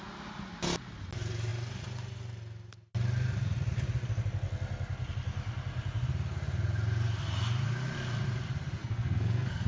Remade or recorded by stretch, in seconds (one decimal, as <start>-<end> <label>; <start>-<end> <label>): 0.0-8.8 recorded; 8.8-9.7 remade